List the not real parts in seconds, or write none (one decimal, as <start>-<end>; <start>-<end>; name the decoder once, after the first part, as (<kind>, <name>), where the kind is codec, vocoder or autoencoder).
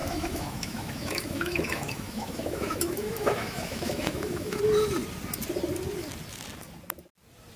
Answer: 0.0-4.6 (autoencoder, DAC-VAE)